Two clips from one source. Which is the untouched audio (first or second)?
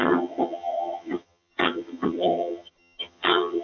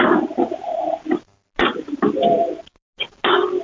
second